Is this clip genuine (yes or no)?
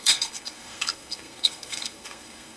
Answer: no